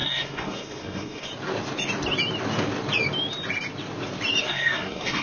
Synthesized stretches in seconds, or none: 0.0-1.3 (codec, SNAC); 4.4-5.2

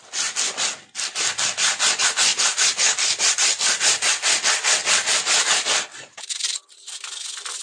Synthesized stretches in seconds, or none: 2.3-3.8 (vocoder, BigVGAN v2); 4.8-5.5